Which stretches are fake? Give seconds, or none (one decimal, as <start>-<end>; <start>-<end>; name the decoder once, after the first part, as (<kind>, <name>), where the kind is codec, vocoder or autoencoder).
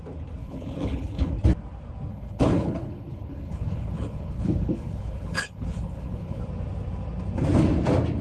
0.4-1.3 (codec, HILCodec); 2.1-6.4